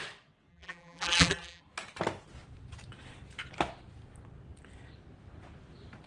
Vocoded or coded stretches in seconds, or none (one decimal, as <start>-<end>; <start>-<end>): 0.5-1.6